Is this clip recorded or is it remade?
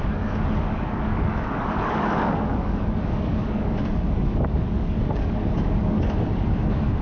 remade